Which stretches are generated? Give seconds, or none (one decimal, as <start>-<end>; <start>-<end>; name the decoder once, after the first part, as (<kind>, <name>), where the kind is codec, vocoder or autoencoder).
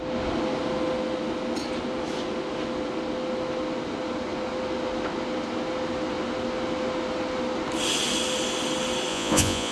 9.1-9.7 (vocoder, Vocos)